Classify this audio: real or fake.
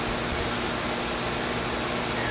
real